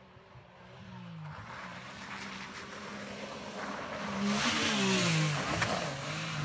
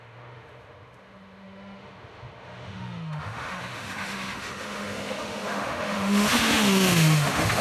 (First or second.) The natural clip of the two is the first